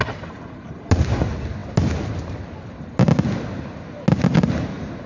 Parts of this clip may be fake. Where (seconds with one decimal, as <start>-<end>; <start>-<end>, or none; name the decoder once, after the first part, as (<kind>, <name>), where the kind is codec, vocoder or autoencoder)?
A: none